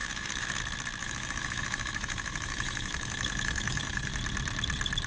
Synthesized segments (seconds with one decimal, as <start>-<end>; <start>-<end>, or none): 0.0-0.6; 1.0-4.1